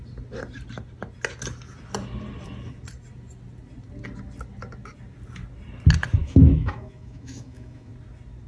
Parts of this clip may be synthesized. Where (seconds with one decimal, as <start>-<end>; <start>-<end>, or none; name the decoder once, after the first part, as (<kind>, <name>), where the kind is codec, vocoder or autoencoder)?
6.2-7.9 (autoencoder, DAC-VAE)